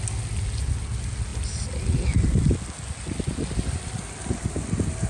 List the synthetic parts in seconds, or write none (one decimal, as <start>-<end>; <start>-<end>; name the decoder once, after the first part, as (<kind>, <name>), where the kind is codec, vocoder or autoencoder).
none